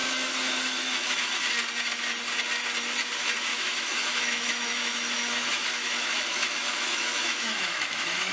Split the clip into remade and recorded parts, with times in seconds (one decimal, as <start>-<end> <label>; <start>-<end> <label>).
0.0-1.3 remade; 1.3-3.5 recorded; 3.5-8.3 remade